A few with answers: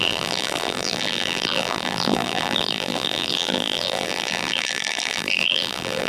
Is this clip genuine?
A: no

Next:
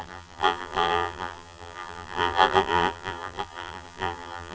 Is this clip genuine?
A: no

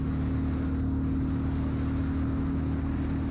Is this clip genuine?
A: yes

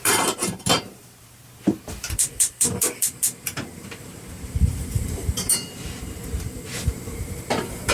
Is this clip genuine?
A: no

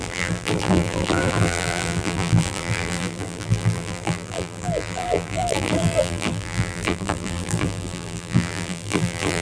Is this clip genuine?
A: no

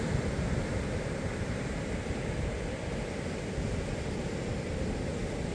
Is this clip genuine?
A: yes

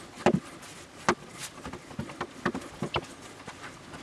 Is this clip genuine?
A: yes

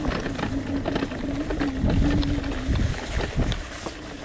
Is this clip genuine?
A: yes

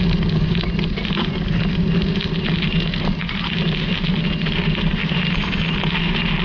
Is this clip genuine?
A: yes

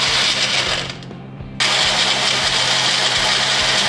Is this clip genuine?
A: yes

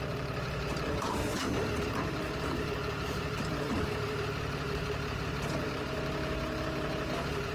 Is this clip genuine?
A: no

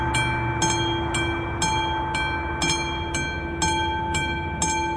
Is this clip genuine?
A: yes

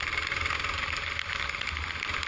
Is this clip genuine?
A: yes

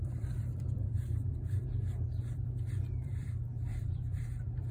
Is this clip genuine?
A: no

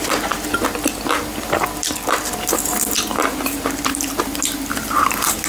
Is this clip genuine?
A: no